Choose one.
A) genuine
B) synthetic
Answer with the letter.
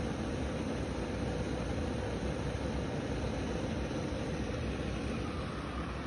A